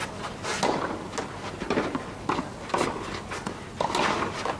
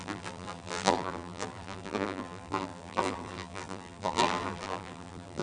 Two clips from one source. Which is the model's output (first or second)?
second